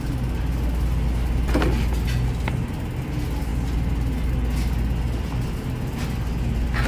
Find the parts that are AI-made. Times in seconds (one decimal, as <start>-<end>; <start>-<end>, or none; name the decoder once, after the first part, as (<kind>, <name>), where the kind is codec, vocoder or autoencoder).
none